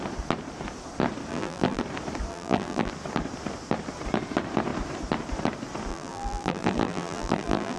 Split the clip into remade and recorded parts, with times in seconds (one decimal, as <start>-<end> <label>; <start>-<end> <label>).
0.0-1.3 recorded; 1.3-1.8 remade; 1.8-2.3 recorded; 2.3-2.9 remade; 2.9-5.9 recorded; 5.9-7.8 remade